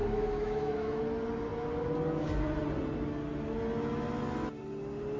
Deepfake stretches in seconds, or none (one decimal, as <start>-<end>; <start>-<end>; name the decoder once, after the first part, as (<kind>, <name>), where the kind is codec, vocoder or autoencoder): 0.0-1.0 (autoencoder, DAC-VAE)